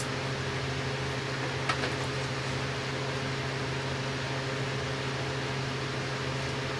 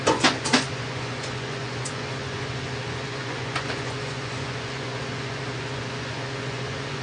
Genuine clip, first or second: first